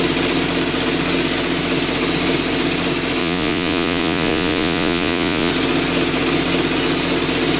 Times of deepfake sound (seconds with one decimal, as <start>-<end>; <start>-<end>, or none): 3.2-5.5